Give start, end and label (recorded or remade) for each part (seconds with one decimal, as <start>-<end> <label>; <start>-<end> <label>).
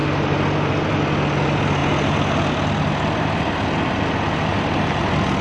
0.0-5.4 recorded